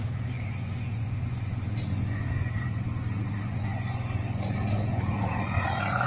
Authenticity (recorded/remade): remade